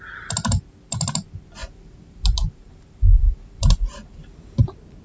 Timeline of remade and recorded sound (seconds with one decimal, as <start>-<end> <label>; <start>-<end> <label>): 0.0-1.6 recorded; 1.6-4.6 remade; 4.6-5.0 recorded